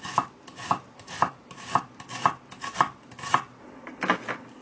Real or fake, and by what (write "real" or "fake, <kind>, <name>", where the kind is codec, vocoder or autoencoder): real